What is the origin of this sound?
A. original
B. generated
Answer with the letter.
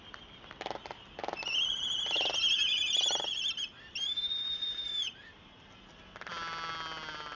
A